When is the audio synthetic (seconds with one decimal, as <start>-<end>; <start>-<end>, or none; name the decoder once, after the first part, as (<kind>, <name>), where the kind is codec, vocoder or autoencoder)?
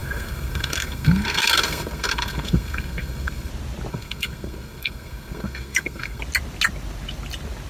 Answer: 0.0-3.5 (codec, SNAC); 3.9-6.2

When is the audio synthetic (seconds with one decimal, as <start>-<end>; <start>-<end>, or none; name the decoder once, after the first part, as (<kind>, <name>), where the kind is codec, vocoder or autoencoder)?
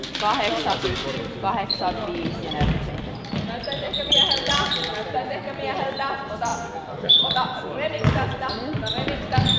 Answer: none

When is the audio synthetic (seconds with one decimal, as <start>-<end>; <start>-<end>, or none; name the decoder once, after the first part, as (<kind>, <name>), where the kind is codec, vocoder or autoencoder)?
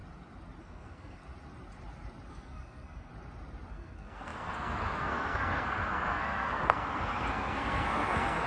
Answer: 0.6-1.2 (codec, SNAC); 2.3-3.1; 3.7-8.5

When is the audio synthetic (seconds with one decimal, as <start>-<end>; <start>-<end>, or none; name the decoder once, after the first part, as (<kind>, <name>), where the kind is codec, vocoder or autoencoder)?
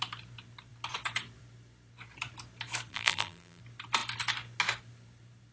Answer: 2.9-3.6 (vocoder, BigVGAN v2)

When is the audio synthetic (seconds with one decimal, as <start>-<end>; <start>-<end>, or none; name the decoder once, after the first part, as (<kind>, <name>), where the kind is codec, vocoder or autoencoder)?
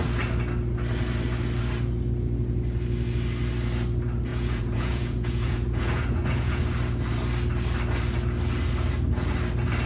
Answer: 4.3-6.6 (vocoder, Vocos)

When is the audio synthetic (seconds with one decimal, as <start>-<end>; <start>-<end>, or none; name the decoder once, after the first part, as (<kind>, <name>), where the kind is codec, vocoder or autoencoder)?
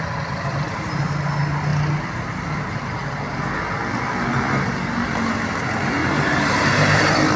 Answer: 0.5-1.0 (vocoder, BigVGAN v2); 6.0-7.4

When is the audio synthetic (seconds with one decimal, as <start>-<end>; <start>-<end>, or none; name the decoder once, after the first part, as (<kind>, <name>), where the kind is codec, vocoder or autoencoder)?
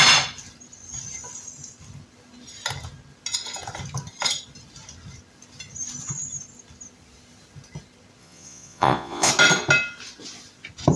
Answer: 8.2-9.3 (vocoder, Vocos)